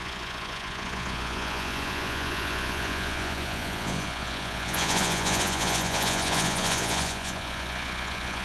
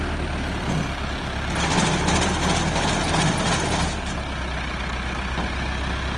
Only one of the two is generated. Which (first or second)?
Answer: first